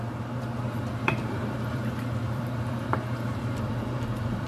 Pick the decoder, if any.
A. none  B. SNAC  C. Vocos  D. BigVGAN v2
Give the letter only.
D